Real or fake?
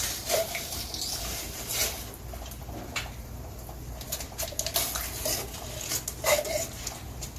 real